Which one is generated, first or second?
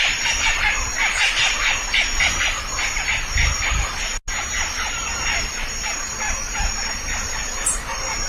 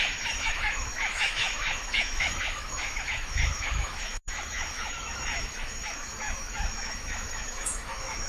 second